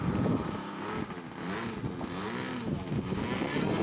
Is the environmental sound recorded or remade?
recorded